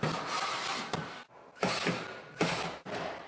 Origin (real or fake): real